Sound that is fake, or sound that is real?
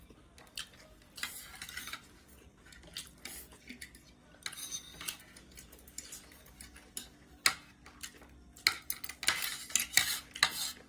real